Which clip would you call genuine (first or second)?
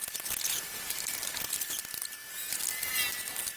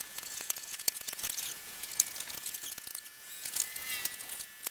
first